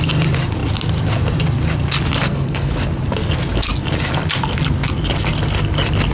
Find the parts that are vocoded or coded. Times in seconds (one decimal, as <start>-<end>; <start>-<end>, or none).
2.2-2.7